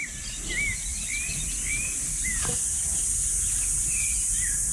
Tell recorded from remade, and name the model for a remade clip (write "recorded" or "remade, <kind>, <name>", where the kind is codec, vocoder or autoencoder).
recorded